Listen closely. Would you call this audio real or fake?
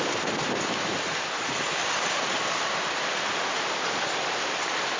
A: real